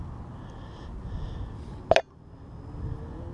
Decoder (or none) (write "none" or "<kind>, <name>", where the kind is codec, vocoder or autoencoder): none